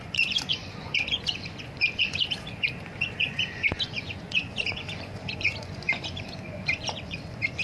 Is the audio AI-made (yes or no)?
yes